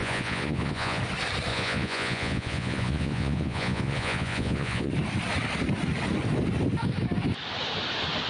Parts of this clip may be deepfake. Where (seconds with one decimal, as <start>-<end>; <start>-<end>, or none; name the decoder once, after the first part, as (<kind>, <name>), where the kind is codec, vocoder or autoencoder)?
0.0-1.0 (vocoder, Vocos); 1.5-4.9